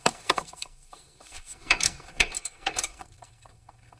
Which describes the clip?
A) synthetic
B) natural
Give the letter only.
A